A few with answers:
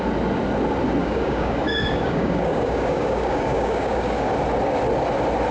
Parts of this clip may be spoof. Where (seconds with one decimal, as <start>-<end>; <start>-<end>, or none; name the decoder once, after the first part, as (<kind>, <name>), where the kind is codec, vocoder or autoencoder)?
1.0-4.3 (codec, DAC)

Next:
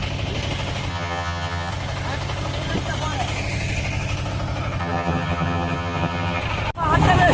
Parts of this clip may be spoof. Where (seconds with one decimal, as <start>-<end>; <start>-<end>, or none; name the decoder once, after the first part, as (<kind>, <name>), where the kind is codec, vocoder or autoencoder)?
0.9-1.7 (vocoder, HiFi-GAN); 4.8-6.4

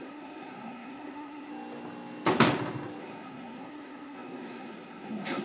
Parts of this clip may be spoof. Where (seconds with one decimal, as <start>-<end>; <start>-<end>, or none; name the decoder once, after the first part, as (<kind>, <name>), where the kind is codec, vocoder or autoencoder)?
0.0-1.5 (codec, SNAC); 3.0-5.4